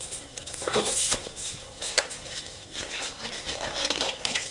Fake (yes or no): yes